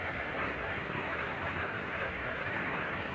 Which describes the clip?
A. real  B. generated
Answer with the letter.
B